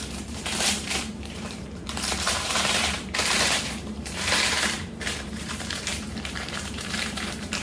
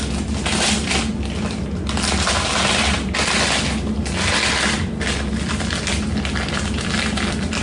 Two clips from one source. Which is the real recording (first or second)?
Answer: second